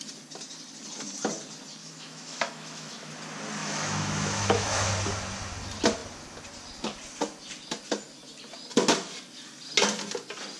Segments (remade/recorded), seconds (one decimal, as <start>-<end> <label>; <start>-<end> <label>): 0.0-1.8 recorded; 1.8-3.1 remade; 3.1-3.6 recorded; 3.6-4.9 remade; 4.9-10.6 recorded